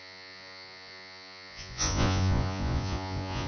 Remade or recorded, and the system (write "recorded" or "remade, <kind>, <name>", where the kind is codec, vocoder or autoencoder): remade, vocoder, Vocos